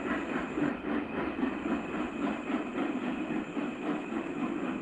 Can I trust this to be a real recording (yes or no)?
yes